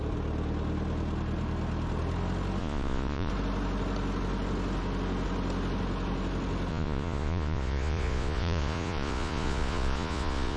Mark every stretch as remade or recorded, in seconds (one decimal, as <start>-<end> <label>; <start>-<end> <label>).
0.0-2.6 recorded; 2.6-3.3 remade; 3.3-6.7 recorded; 6.7-10.6 remade